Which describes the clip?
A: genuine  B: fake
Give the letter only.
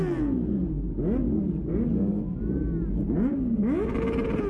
A